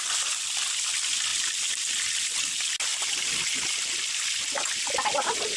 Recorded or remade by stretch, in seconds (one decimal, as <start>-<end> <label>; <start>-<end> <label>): 0.0-1.3 recorded; 1.3-1.8 remade; 1.8-5.6 recorded

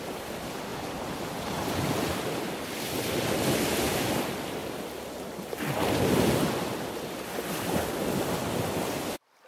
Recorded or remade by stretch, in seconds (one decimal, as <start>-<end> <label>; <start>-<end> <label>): 0.0-0.7 remade; 0.7-3.2 recorded; 3.2-4.6 remade; 4.6-6.6 recorded; 6.6-9.5 remade

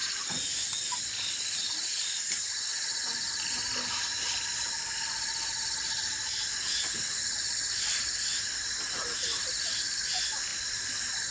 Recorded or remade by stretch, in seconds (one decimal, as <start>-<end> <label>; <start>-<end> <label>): 0.0-1.0 remade; 1.0-1.9 recorded; 1.9-3.7 remade; 3.7-10.5 recorded; 10.5-11.3 remade